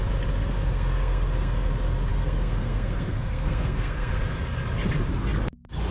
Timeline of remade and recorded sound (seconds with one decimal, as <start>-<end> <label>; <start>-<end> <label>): 0.0-0.4 recorded; 0.4-1.7 remade; 1.7-2.1 recorded; 2.1-4.2 remade; 4.2-5.9 recorded